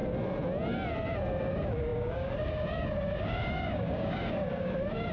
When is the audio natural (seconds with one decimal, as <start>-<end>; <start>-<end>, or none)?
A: 0.0-1.4